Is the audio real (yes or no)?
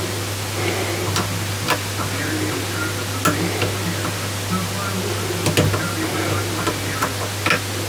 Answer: yes